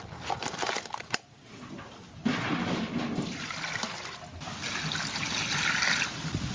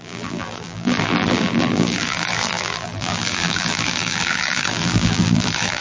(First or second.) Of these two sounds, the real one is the first